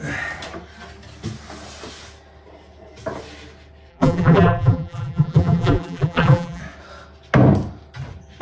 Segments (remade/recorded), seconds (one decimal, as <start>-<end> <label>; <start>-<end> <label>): 0.0-3.9 recorded; 3.9-6.6 remade; 6.6-8.4 recorded